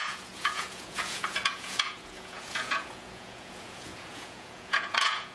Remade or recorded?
remade